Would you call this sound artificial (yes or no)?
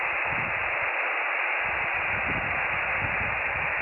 no